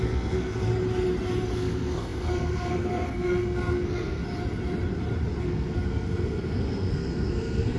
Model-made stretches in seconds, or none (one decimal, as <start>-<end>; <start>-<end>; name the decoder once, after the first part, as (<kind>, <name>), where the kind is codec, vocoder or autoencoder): 0.0-0.7 (codec, SNAC); 1.5-4.2; 5.4-7.8